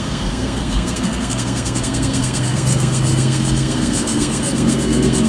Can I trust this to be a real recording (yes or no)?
no